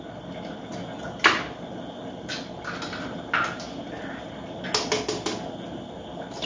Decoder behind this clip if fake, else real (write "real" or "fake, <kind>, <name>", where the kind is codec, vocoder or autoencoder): real